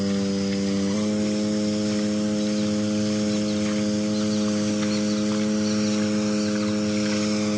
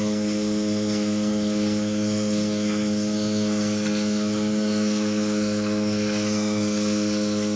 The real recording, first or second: first